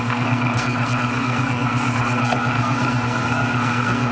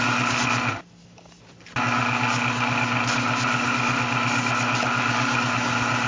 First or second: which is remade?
first